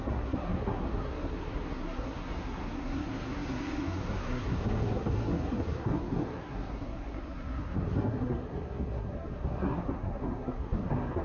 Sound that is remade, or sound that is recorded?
remade